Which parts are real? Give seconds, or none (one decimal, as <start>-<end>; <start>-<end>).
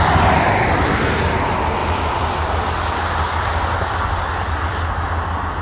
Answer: 0.0-1.8